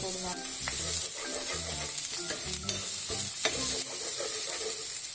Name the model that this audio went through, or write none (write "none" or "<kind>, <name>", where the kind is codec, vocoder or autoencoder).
none